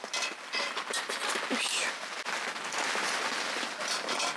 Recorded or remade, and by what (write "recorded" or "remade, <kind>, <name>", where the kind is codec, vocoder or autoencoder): recorded